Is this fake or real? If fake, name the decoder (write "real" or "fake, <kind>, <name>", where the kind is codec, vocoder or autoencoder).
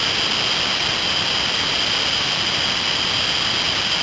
real